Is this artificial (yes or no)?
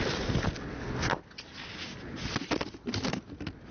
no